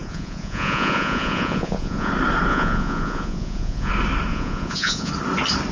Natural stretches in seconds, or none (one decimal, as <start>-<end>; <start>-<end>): 2.1-2.5; 3.9-4.3; 5.1-5.7